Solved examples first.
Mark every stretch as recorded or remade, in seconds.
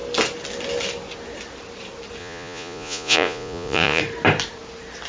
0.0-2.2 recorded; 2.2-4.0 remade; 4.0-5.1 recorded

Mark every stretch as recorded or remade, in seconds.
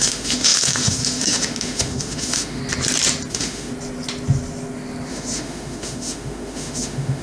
0.0-2.6 remade; 2.6-3.3 recorded; 3.3-3.7 remade; 3.7-5.1 recorded; 5.1-7.2 remade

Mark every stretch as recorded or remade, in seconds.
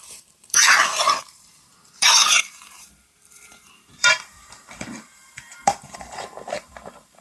0.0-0.6 remade; 0.6-1.2 recorded; 1.2-7.2 remade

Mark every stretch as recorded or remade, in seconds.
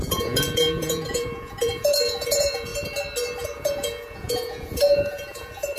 0.0-2.7 remade; 2.7-3.4 recorded; 3.4-5.8 remade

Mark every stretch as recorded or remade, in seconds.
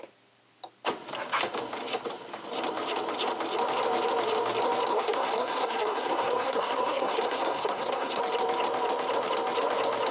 0.0-4.9 recorded; 4.9-8.2 remade; 8.2-10.1 recorded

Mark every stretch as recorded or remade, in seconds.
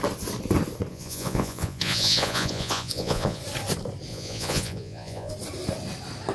0.0-0.9 recorded; 0.9-3.4 remade; 3.4-4.1 recorded; 4.1-5.3 remade; 5.3-6.3 recorded